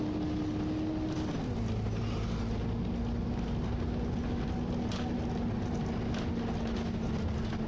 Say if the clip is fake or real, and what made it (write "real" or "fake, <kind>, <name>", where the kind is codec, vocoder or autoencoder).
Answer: real